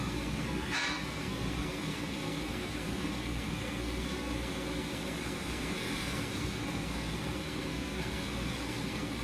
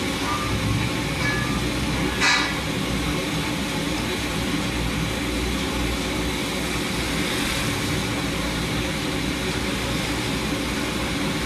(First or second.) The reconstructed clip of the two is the first